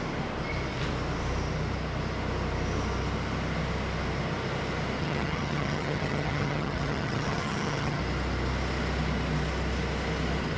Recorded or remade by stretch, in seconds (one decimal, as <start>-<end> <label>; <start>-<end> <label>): 0.0-5.0 recorded; 5.0-8.0 remade; 8.0-10.6 recorded